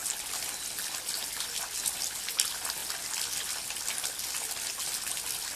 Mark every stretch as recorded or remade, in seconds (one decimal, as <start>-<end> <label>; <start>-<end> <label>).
0.0-5.6 recorded